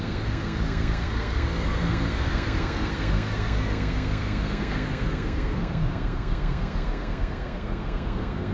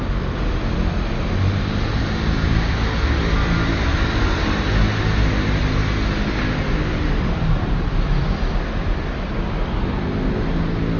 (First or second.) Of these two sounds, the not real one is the first